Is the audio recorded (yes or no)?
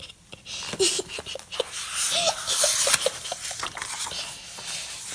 yes